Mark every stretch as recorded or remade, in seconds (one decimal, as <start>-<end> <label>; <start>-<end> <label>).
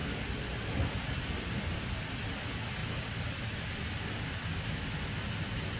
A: 0.0-5.8 recorded